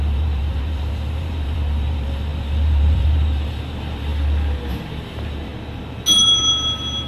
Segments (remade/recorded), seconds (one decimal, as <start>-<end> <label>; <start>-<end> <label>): 0.0-4.1 remade; 4.1-4.7 recorded; 4.7-5.5 remade; 5.5-7.1 recorded